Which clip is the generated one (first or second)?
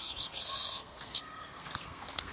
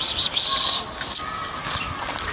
first